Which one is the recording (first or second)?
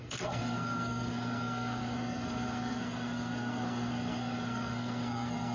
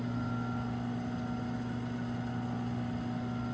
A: second